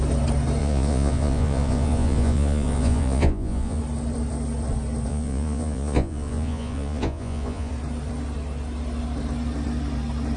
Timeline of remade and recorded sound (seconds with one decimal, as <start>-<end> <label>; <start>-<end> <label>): 0.0-0.6 recorded; 0.6-3.8 remade; 3.8-5.1 recorded; 5.1-7.7 remade; 7.7-10.4 recorded